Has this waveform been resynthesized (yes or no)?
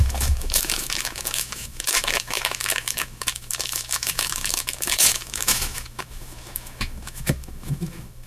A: yes